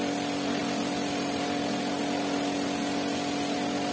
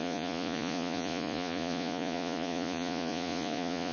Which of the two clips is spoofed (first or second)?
second